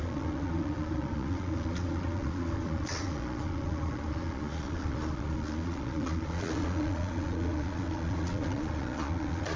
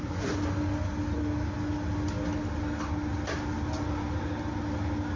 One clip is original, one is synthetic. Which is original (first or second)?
second